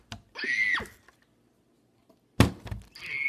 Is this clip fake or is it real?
real